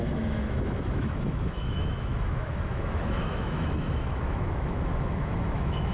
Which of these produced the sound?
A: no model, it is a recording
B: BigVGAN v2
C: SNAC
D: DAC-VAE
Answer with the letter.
D